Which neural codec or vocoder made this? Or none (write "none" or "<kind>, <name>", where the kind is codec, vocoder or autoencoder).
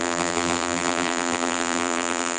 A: vocoder, BigVGAN v2